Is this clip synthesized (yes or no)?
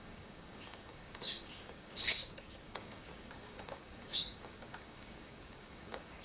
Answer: yes